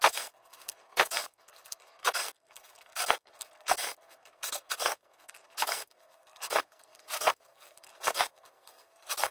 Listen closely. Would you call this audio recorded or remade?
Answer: remade